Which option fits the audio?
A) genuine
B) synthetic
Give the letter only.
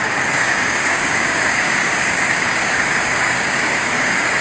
B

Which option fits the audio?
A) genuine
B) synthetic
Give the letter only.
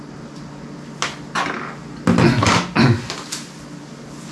A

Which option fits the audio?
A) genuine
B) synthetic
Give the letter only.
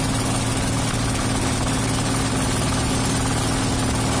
A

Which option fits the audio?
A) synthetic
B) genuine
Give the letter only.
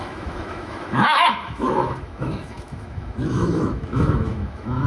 A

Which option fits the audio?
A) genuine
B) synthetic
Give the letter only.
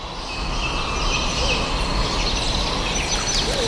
A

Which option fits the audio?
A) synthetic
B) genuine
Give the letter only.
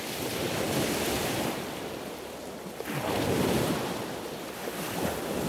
B